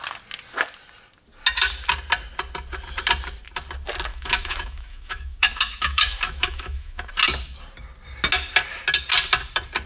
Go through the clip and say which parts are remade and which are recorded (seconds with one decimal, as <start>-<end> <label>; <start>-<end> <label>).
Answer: 0.0-4.1 recorded; 4.1-7.1 remade; 7.1-9.9 recorded